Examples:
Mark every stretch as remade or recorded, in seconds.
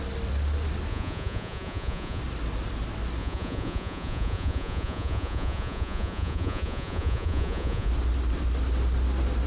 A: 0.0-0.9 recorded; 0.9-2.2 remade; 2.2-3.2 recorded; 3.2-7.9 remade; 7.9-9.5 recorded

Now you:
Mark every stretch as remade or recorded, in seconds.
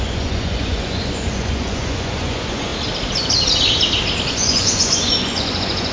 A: 0.0-2.7 remade; 2.7-4.3 recorded; 4.3-5.9 remade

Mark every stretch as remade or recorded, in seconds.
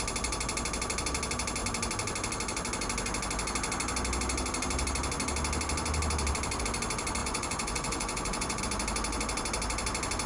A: 0.0-7.2 recorded; 7.2-8.6 remade; 8.6-10.3 recorded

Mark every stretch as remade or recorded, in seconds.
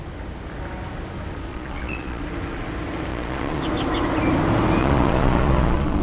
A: 0.0-1.5 recorded; 1.5-2.2 remade; 2.2-3.1 recorded; 3.1-3.6 remade; 3.6-4.8 recorded; 4.8-6.0 remade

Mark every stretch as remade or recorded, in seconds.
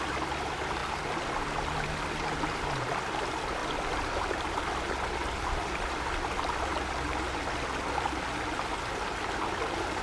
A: 0.0-10.0 recorded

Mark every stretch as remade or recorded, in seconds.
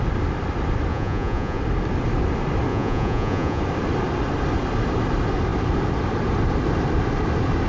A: 0.0-0.9 recorded; 0.9-1.6 remade; 1.6-2.7 recorded; 2.7-3.6 remade; 3.6-7.7 recorded